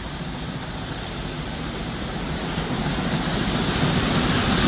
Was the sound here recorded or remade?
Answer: recorded